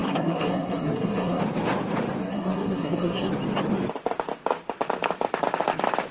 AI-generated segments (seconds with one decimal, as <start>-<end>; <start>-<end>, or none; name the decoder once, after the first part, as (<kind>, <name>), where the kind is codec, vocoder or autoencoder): 0.0-1.4 (codec, SNAC); 2.2-3.3